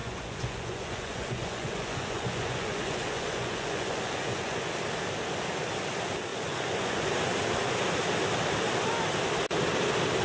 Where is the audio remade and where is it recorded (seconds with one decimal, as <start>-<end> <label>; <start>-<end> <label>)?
0.0-4.7 remade; 4.7-6.3 recorded; 6.3-7.1 remade; 7.1-10.2 recorded